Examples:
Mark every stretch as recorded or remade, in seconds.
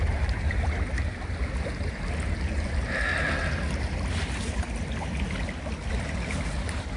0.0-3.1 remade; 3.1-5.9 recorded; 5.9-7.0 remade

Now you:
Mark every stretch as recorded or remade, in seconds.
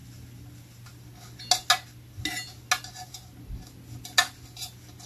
0.0-5.1 recorded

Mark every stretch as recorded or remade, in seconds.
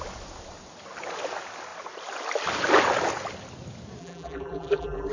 0.0-4.0 recorded; 4.0-5.1 remade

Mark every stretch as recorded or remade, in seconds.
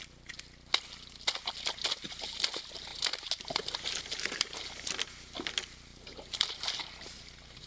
0.0-2.9 recorded; 2.9-4.0 remade; 4.0-5.9 recorded; 5.9-6.6 remade; 6.6-7.7 recorded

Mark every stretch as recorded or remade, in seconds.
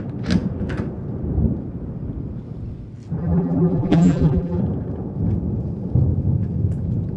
0.0-3.2 recorded; 3.2-4.6 remade; 4.6-7.2 recorded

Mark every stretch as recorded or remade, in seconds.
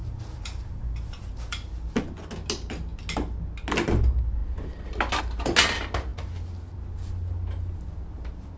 0.0-2.0 remade; 2.0-8.6 recorded